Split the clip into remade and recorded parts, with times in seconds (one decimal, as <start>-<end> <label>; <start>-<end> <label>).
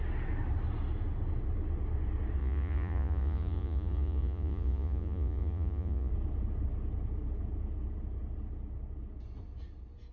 0.0-2.4 recorded; 2.4-6.1 remade; 6.1-10.1 recorded